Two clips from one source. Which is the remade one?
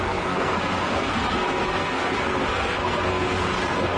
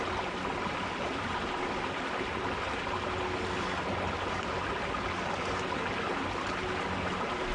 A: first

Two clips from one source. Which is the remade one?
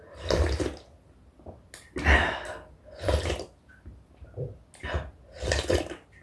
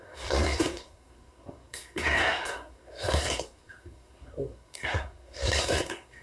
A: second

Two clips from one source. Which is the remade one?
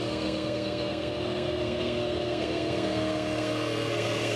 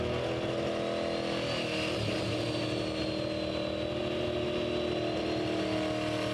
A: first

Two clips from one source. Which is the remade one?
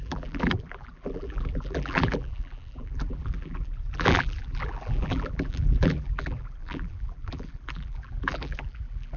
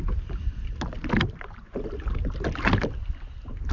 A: first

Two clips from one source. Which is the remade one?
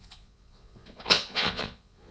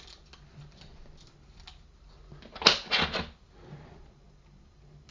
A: first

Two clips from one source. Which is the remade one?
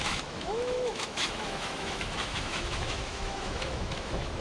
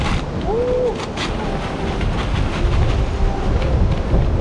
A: first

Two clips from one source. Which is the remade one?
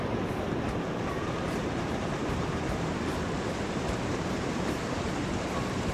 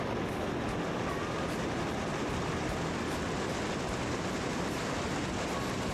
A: first